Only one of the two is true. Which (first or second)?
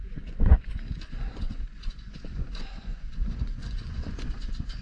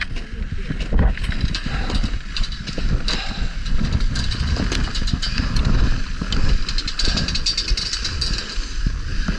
second